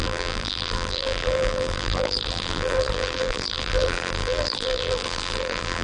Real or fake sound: fake